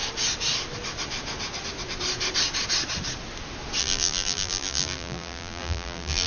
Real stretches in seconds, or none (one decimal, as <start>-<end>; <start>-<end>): 0.0-3.8